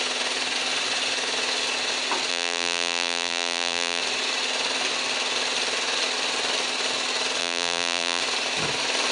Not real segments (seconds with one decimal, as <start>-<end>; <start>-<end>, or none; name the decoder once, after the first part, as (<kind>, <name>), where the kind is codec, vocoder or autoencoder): 2.3-4.0 (vocoder, BigVGAN v2); 7.4-8.2